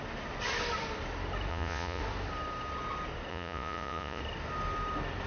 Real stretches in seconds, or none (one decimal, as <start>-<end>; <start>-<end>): 0.0-1.5; 2.0-3.3; 4.2-5.3